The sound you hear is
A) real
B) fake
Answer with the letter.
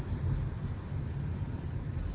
A